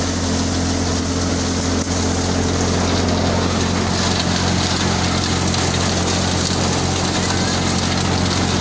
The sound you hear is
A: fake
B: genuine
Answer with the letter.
B